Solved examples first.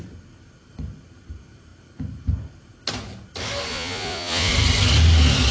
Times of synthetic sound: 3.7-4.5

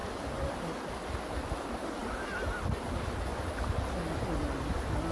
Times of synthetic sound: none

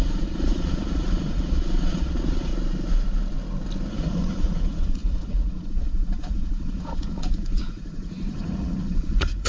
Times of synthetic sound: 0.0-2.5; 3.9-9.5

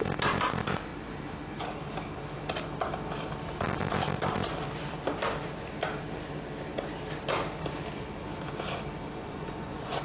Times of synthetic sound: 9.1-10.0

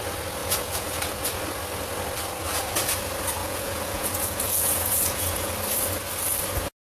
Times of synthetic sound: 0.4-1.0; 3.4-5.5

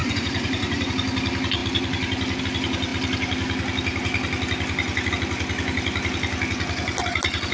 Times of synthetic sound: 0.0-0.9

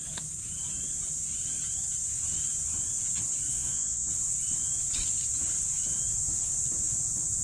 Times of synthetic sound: 3.5-4.1

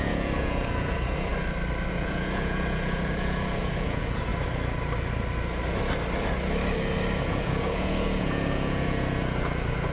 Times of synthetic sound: 0.0-1.3; 1.9-4.3; 7.3-9.9